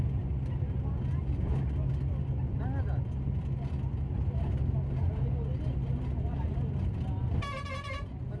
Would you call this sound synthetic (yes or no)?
no